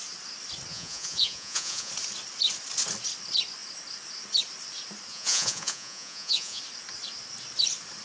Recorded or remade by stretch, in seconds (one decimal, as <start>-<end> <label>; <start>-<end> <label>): 0.0-0.7 recorded; 0.7-1.9 remade; 1.9-5.1 recorded; 5.1-6.6 remade; 6.6-8.0 recorded